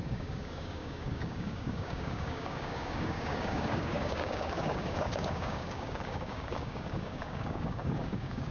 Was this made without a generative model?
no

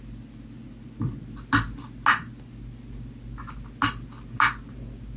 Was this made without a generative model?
yes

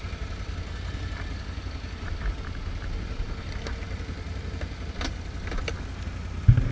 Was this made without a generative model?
yes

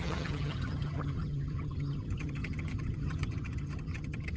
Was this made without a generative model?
no